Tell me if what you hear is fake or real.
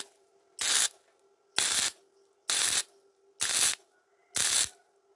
real